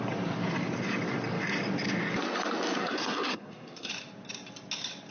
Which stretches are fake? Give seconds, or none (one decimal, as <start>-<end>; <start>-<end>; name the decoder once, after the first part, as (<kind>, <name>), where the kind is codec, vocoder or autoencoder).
2.8-3.9 (codec, SNAC)